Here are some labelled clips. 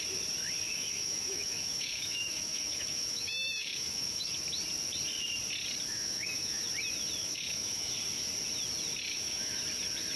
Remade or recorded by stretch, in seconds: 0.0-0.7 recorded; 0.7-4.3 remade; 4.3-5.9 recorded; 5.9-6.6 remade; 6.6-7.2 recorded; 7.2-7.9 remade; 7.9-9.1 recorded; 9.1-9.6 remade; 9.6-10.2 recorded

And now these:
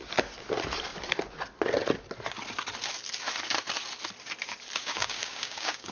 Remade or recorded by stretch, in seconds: 0.0-4.8 recorded; 4.8-5.9 remade

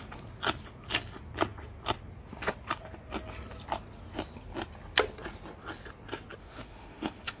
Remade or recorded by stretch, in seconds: 0.0-6.4 recorded; 6.4-7.4 remade

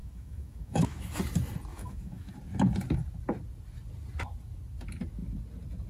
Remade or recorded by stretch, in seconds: 0.0-1.1 remade; 1.1-1.7 recorded; 1.7-2.3 remade; 2.3-5.9 recorded

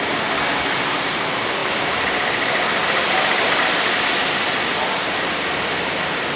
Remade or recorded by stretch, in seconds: 0.0-6.4 recorded

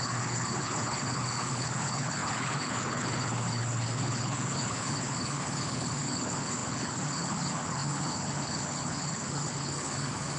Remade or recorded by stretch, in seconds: 0.0-10.4 remade

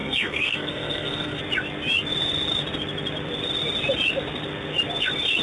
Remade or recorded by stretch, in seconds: 0.0-1.4 remade; 1.4-5.4 recorded

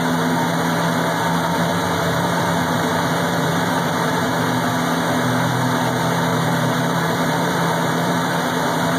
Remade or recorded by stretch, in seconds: 0.0-1.7 recorded; 1.7-4.3 remade; 4.3-6.3 recorded; 6.3-9.0 remade